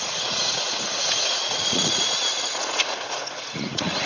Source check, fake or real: fake